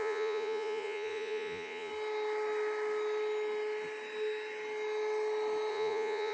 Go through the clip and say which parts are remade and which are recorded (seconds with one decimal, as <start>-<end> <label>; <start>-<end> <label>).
0.0-1.9 remade; 1.9-5.7 recorded; 5.7-6.3 remade